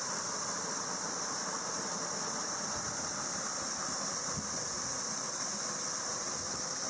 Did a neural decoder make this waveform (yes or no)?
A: no